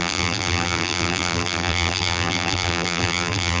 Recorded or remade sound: remade